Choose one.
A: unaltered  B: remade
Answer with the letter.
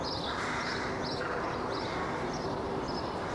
A